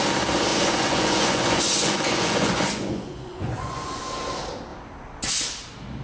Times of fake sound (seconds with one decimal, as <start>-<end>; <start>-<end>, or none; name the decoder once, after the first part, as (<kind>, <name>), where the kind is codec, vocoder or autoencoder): 0.5-4.0 (vocoder, Vocos)